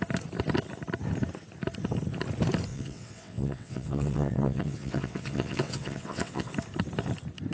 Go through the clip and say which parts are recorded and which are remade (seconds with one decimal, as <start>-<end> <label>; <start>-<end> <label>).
0.0-2.7 recorded; 2.7-6.5 remade; 6.5-7.5 recorded